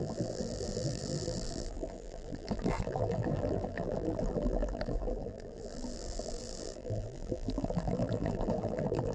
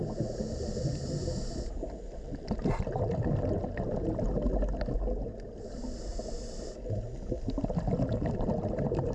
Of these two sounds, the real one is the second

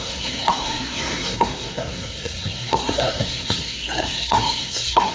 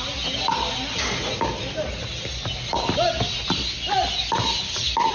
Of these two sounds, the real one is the second